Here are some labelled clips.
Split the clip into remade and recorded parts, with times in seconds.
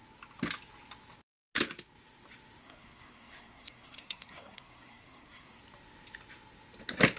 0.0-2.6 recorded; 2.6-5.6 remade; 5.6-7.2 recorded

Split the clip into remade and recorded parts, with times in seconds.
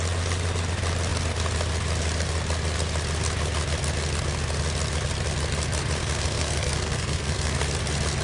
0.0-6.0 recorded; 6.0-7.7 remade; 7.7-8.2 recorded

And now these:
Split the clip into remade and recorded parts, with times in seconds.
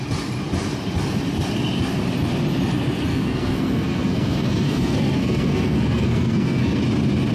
0.0-3.1 recorded; 3.1-6.8 remade; 6.8-7.3 recorded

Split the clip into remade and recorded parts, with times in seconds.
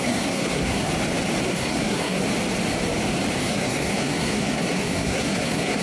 0.0-0.9 remade; 0.9-1.5 recorded; 1.5-2.2 remade; 2.2-3.4 recorded; 3.4-5.8 remade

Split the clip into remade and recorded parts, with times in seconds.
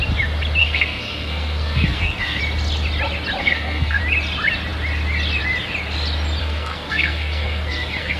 0.0-0.6 recorded; 0.6-2.4 remade; 2.4-3.4 recorded; 3.4-4.0 remade; 4.0-6.4 recorded; 6.4-8.2 remade